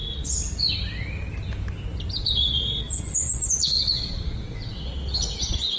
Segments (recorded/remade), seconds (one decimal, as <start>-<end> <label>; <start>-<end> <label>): 0.0-0.7 remade; 0.7-2.2 recorded; 2.2-5.8 remade